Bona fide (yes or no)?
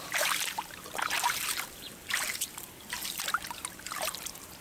no